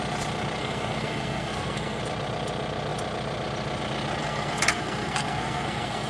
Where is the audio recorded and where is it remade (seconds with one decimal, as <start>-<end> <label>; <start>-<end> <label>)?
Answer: 0.0-0.6 recorded; 0.6-2.0 remade; 2.0-4.2 recorded; 4.2-6.1 remade